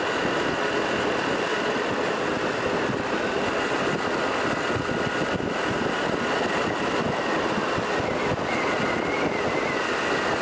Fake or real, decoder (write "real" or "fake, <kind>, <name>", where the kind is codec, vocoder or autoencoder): real